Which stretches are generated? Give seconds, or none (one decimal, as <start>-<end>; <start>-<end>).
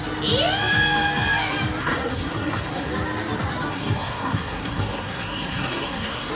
1.8-2.9; 3.7-6.3